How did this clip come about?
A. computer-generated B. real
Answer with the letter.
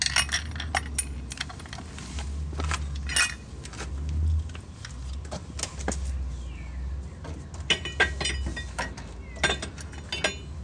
B